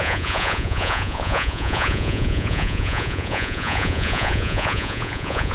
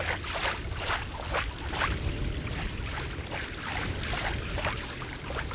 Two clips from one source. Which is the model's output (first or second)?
first